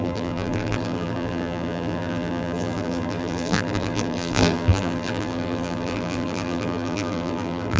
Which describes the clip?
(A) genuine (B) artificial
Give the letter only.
B